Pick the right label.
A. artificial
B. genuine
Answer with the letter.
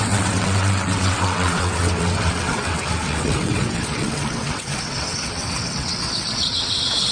A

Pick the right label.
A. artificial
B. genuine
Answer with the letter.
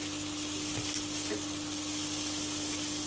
B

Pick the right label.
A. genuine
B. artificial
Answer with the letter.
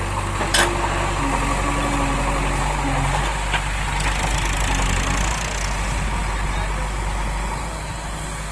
A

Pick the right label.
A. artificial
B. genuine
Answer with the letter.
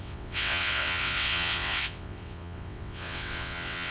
A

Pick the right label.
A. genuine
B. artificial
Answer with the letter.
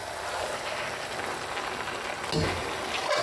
A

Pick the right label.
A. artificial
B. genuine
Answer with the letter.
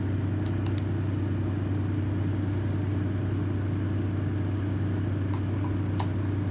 B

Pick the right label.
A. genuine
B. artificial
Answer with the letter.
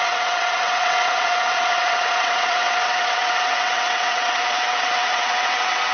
B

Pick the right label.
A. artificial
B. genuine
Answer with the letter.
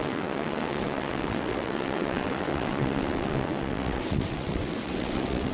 A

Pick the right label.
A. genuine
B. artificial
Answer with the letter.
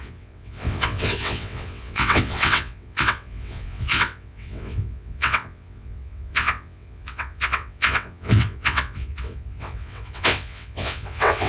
B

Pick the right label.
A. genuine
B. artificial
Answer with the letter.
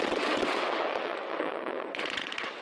B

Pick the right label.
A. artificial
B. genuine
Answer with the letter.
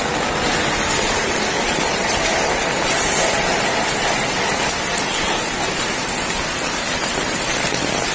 B